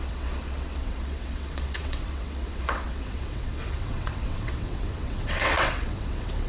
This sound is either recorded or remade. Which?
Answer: remade